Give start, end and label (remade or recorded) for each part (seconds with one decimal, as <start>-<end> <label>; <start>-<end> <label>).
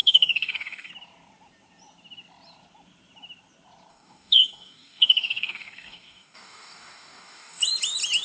0.0-0.9 remade; 0.9-3.9 recorded; 3.9-7.6 remade; 7.6-8.2 recorded